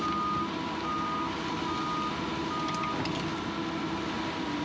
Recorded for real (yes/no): yes